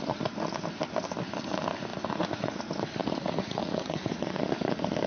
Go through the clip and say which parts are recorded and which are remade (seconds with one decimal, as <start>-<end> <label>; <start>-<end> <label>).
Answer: 0.0-1.9 recorded; 1.9-2.6 remade; 2.6-3.0 recorded; 3.0-4.4 remade; 4.4-5.1 recorded